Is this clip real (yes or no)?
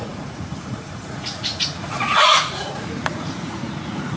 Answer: no